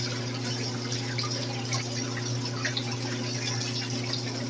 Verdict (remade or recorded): remade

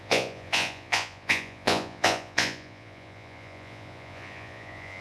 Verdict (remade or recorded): remade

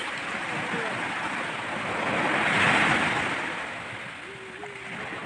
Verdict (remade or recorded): recorded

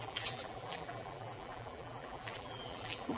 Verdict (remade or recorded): remade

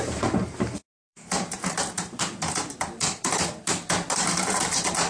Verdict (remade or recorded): remade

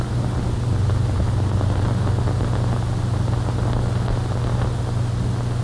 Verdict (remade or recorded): recorded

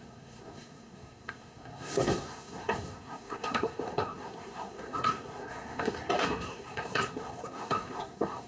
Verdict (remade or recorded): remade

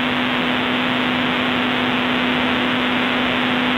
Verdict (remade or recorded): recorded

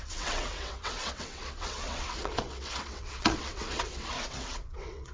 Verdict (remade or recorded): remade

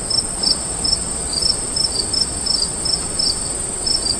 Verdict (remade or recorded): recorded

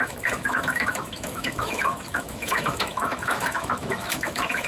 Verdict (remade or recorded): remade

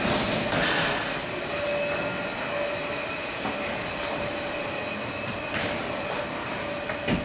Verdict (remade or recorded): recorded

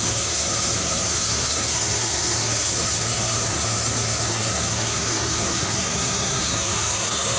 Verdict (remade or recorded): remade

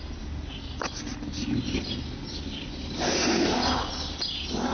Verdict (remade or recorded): recorded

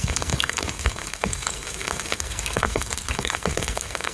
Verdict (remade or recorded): remade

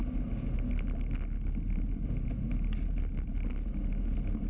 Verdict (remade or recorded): recorded